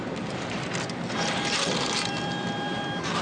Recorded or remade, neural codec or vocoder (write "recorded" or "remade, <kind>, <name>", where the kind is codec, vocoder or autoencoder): remade, vocoder, BigVGAN v2